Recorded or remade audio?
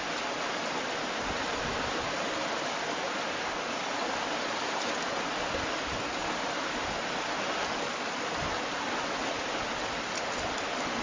recorded